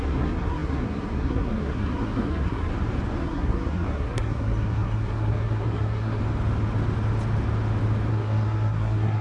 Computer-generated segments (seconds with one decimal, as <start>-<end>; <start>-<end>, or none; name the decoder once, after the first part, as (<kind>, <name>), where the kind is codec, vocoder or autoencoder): 0.0-2.7 (codec, SNAC); 3.2-6.2; 8.1-9.2

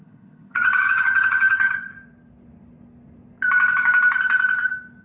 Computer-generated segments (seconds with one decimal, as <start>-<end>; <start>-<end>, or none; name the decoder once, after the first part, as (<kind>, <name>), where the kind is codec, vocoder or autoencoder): 0.0-1.9 (vocoder, HiFi-GAN)

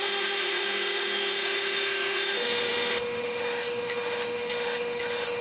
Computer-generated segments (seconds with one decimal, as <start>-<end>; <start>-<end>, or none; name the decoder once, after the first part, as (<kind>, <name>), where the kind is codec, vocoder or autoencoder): 0.0-5.4 (autoencoder, DAC-VAE)